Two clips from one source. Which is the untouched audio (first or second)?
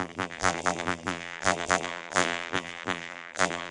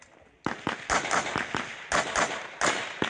second